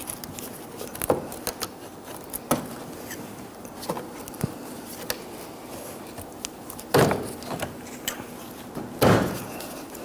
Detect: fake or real real